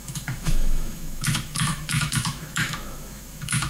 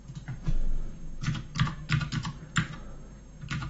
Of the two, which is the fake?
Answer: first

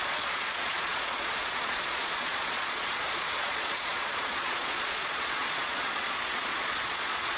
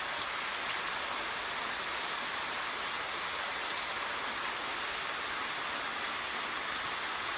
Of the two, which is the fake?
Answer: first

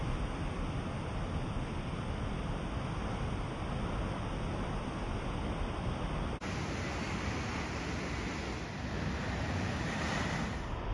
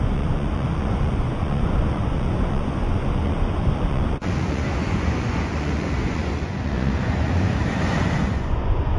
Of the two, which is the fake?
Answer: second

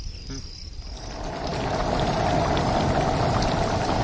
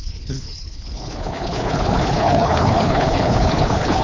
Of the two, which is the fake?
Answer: second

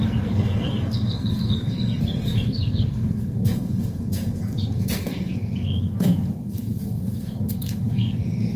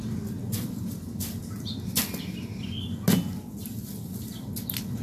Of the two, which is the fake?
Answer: first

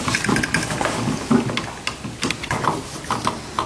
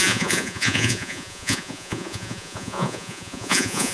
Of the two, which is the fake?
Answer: second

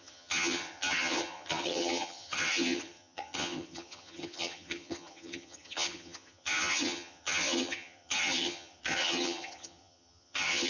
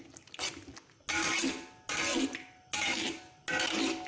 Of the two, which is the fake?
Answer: first